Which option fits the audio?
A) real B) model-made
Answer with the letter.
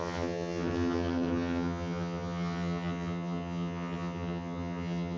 B